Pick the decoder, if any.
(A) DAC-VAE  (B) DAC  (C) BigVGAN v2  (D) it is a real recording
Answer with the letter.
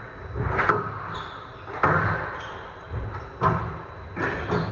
D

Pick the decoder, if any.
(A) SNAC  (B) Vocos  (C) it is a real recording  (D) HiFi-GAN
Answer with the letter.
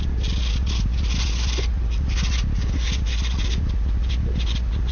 C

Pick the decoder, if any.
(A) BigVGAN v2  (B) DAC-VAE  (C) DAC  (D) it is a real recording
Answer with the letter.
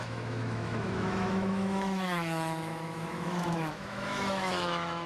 B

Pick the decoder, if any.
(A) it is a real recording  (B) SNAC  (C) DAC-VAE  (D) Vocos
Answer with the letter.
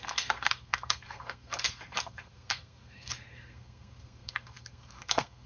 B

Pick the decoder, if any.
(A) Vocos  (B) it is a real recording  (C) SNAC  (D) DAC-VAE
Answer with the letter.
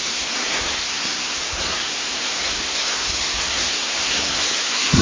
C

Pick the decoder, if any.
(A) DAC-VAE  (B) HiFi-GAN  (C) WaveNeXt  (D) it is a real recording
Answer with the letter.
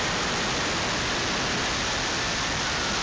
D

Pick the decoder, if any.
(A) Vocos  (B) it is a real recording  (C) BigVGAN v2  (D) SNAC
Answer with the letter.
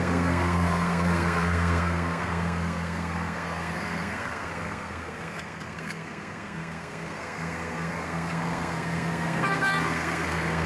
D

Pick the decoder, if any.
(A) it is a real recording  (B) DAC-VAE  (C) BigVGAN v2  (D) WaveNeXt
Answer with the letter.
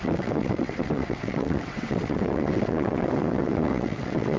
D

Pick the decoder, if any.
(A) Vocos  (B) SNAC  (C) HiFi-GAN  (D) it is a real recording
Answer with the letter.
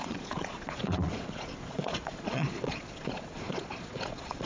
A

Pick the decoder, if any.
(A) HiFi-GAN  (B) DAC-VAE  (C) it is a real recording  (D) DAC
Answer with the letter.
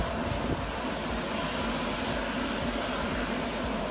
C